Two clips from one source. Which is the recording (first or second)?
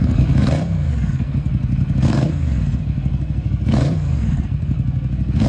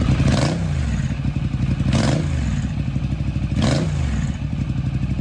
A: second